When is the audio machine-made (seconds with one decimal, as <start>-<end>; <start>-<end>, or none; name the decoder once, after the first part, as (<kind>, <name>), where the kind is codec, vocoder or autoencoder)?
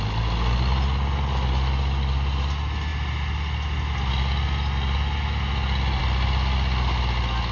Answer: none